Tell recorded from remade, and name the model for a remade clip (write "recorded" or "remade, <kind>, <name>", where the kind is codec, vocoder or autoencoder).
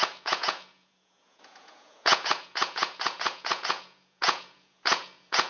remade, vocoder, Vocos